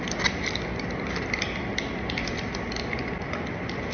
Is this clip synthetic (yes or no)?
no